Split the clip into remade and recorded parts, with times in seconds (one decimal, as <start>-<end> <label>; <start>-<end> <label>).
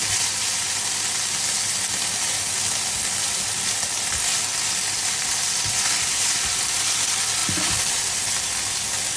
0.0-9.2 recorded